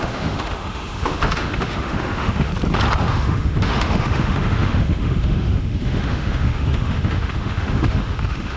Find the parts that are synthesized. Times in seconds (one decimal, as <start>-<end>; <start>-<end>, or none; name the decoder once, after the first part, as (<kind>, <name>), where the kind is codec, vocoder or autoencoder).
0.0-2.5 (autoencoder, DAC-VAE); 3.0-8.6